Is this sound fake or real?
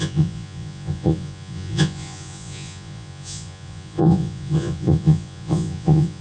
fake